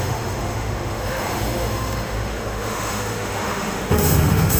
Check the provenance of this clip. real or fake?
fake